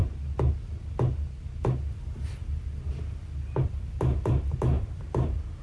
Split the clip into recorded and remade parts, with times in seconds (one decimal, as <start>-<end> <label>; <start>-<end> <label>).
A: 0.0-1.6 recorded; 1.6-5.6 remade